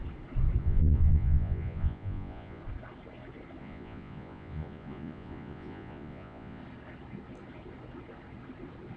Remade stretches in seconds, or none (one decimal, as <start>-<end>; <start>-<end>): 0.6-2.6; 3.6-6.6